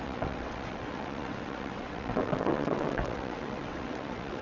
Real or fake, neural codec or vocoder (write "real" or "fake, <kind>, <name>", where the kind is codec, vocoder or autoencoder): fake, vocoder, WaveNeXt